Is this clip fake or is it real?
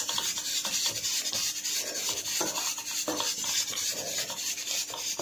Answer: real